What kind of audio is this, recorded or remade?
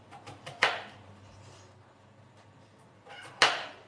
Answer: recorded